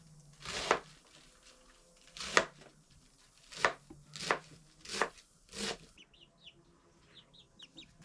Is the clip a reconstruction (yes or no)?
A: no